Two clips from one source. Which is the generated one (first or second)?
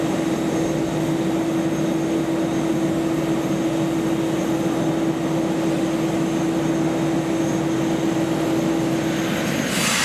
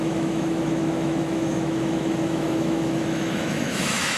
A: second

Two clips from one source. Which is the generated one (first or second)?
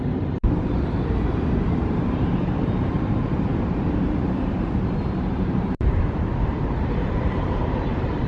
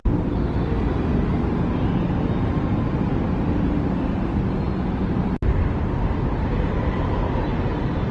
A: first